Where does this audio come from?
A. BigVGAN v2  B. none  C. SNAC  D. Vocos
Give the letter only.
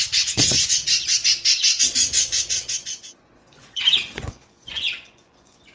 D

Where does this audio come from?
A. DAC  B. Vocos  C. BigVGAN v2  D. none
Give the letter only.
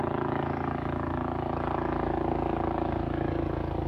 A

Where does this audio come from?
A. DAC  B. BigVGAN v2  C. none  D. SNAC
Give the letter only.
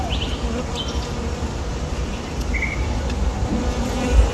C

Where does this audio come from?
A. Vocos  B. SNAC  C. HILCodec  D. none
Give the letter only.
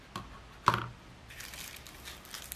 D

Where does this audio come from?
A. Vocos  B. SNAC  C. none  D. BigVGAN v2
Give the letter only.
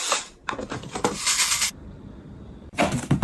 D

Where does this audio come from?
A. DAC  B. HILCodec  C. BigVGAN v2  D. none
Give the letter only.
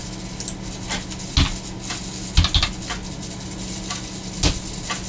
D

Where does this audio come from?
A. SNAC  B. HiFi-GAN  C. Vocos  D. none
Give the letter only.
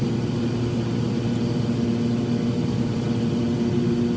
D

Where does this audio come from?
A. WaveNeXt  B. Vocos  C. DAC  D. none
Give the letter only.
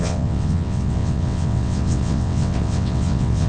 A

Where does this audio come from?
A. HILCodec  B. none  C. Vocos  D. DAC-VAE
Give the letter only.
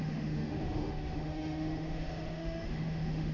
D